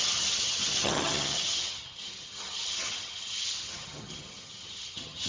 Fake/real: fake